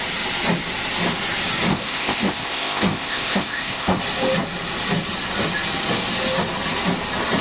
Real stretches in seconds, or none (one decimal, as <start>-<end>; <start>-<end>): 0.0-1.7; 4.0-7.4